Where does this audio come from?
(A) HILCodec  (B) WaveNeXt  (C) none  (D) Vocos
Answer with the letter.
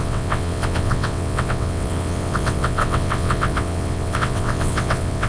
B